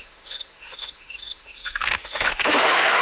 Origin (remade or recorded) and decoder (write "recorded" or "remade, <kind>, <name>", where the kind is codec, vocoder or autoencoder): remade, autoencoder, DAC-VAE